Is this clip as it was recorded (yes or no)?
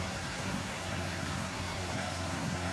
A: no